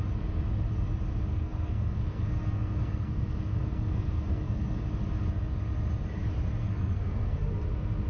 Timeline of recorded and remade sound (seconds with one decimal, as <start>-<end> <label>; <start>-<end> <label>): 0.0-1.3 recorded; 1.3-4.8 remade; 4.8-6.6 recorded; 6.6-7.4 remade; 7.4-8.1 recorded